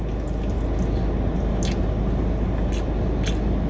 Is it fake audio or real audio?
real